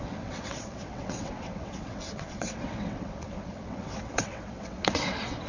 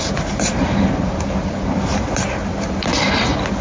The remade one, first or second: first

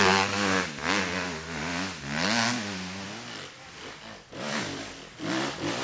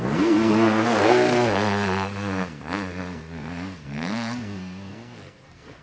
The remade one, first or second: second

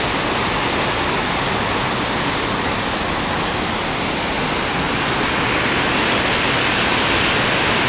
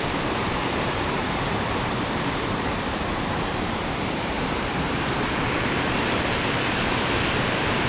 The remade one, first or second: second